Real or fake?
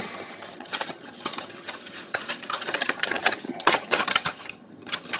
fake